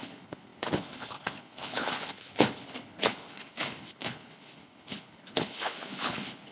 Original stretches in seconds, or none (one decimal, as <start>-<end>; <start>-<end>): none